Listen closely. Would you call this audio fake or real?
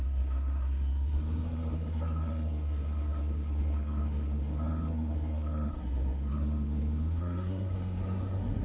fake